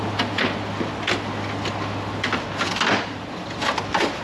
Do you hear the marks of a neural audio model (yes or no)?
no